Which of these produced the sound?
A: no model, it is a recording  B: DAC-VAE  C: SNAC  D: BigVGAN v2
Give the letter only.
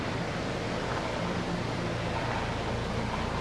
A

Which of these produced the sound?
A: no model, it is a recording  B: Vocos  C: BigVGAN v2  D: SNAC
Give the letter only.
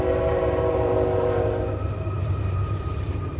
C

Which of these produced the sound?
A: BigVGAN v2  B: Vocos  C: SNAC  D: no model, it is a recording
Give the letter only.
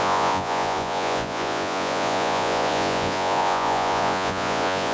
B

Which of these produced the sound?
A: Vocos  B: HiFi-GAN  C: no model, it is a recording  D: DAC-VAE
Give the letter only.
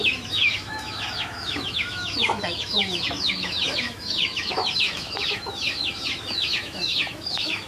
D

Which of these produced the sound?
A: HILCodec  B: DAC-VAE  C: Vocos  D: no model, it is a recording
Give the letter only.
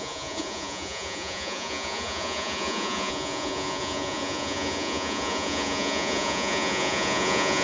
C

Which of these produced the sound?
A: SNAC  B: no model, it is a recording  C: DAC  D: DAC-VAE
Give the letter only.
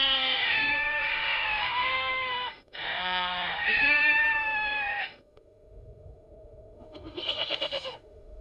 D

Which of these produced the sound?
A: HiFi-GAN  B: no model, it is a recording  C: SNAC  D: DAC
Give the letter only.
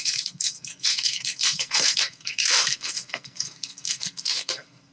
C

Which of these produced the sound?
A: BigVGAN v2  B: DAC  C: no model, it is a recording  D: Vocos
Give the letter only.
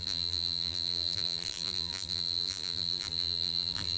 A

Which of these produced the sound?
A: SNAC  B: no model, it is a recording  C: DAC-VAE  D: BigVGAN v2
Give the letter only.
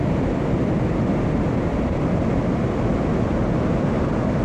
B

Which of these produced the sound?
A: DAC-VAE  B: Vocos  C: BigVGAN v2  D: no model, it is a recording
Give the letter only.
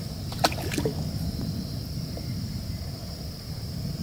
D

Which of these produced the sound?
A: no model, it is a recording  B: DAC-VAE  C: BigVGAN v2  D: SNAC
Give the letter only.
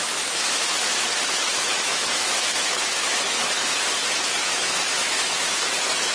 B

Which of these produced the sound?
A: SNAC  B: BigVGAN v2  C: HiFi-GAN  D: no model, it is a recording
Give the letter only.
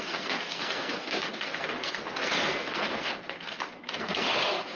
A